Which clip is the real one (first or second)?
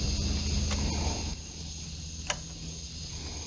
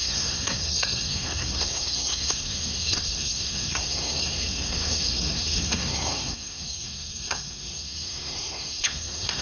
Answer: first